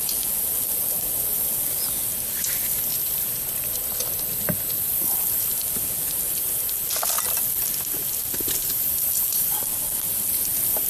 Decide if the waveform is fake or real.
real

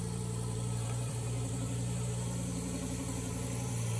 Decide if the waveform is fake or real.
fake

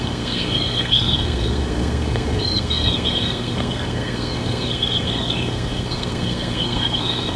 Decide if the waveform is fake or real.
fake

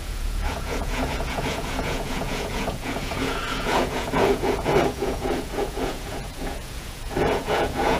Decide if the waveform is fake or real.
fake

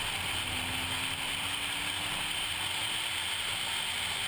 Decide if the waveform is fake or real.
real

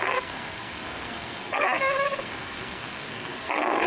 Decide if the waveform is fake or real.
fake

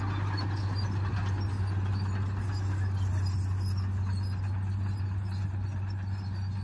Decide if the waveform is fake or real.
real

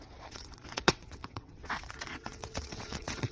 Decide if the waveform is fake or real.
fake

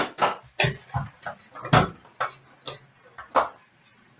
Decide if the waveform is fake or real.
real